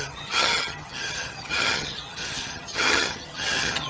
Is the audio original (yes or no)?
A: no